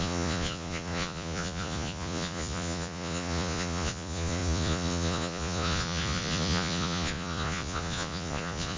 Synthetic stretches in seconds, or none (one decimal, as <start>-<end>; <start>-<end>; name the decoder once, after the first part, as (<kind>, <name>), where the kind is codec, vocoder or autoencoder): 0.0-8.8 (vocoder, Vocos)